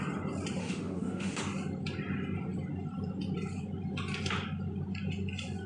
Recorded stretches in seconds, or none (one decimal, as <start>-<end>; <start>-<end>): 0.0-0.6; 1.4-5.7